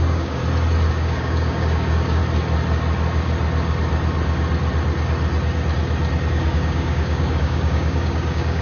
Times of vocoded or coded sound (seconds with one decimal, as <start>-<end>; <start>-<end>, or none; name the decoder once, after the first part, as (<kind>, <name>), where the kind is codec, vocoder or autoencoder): 0.0-0.4 (codec, DAC); 0.9-2.2; 6.3-8.6